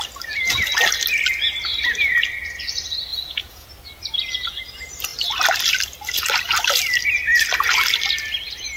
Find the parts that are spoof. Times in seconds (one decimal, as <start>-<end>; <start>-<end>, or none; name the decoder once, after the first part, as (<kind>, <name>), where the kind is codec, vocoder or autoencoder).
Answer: 3.1-3.7 (vocoder, Vocos)